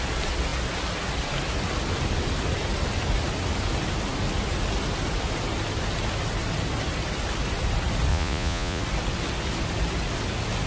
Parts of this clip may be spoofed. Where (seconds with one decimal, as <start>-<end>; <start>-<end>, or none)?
8.1-8.8